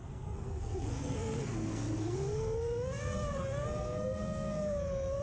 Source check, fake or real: fake